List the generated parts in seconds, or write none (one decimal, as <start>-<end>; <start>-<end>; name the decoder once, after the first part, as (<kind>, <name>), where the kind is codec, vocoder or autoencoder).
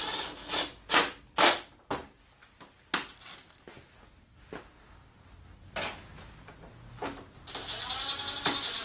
none